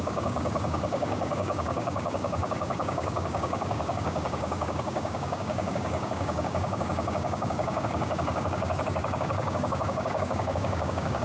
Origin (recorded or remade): remade